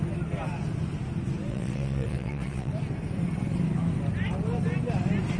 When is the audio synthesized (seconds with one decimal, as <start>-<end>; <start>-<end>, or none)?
1.5-2.7